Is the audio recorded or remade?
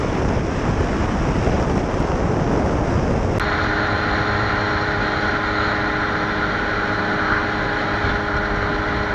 recorded